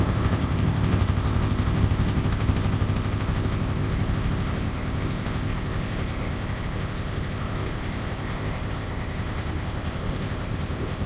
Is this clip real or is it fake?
fake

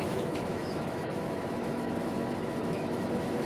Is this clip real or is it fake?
fake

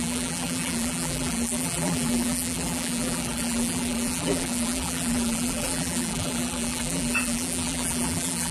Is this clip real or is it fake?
fake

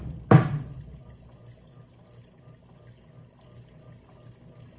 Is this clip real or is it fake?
real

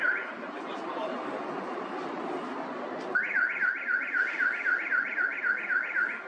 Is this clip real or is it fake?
real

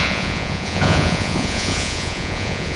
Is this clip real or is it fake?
fake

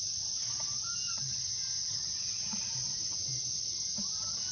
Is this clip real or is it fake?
fake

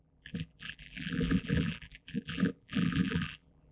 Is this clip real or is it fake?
fake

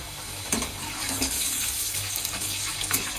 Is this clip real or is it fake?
fake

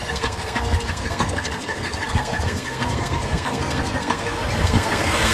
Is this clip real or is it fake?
fake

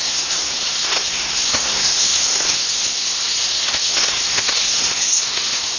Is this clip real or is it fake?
fake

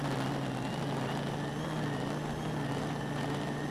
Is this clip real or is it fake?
real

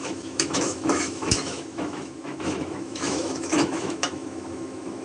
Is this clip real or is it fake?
fake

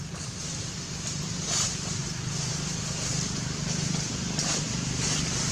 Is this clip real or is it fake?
fake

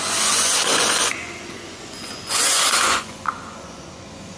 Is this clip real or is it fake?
fake